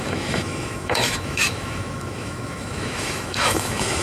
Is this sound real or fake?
fake